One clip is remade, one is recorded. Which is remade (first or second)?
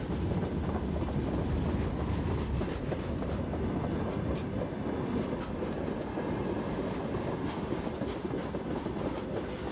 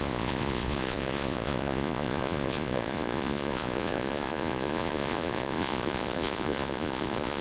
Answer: second